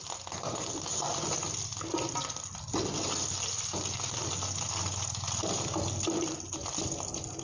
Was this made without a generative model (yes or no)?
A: yes